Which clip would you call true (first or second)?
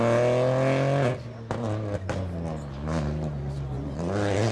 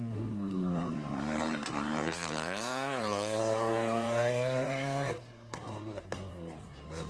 first